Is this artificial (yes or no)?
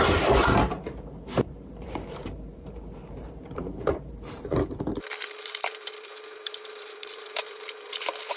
yes